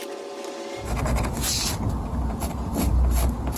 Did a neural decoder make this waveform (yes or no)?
no